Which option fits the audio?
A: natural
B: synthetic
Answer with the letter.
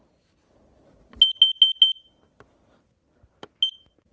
A